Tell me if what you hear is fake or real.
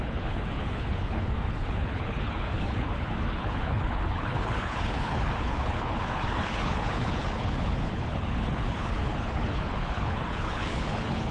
fake